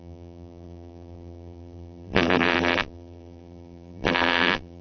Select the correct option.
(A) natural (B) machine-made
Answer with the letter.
B